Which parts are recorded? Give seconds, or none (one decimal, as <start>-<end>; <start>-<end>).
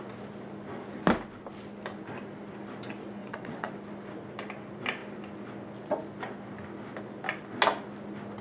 0.0-3.2; 3.7-8.4